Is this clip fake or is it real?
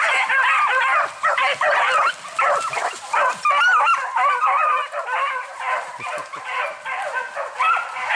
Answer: real